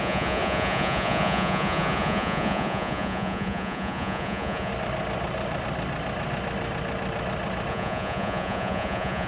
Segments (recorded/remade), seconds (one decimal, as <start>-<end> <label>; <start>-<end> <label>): 0.0-4.7 remade; 4.7-7.7 recorded; 7.7-9.3 remade